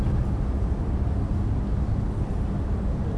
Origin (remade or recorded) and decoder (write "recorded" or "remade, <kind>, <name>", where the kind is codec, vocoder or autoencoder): recorded